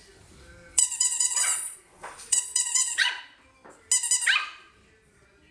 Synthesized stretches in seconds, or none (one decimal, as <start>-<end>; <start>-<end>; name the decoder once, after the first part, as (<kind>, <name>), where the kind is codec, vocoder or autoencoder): 0.7-3.2 (vocoder, Vocos)